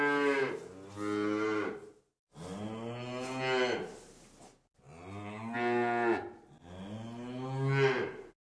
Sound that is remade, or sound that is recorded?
recorded